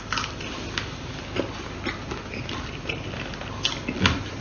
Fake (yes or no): no